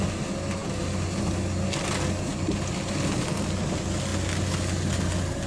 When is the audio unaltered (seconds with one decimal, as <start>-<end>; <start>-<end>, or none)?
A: 0.0-5.5